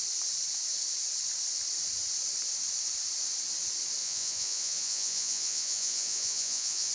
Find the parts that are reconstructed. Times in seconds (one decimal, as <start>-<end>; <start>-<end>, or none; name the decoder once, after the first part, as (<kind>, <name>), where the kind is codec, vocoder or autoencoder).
4.0-6.9 (vocoder, Vocos)